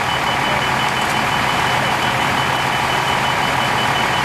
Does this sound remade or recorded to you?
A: recorded